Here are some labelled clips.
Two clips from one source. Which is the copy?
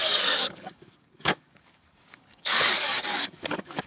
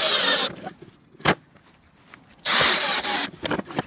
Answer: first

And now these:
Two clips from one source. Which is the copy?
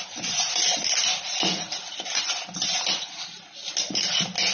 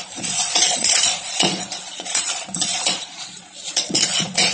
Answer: second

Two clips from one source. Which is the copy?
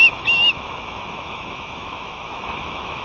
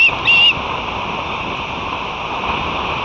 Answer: first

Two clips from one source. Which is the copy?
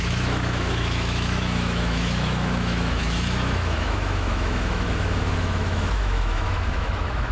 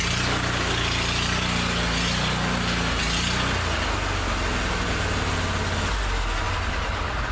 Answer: first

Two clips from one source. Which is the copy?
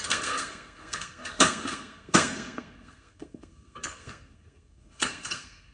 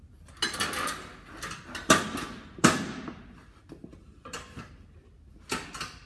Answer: first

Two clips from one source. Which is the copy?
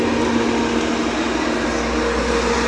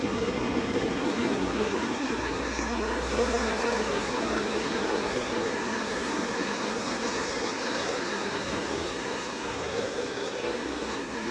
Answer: second